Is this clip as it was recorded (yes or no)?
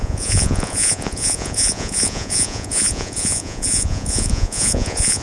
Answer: no